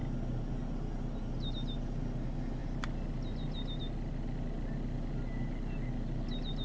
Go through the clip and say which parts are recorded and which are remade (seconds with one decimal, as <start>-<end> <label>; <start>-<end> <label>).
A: 0.0-6.6 recorded